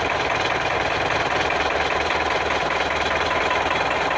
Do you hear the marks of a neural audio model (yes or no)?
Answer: no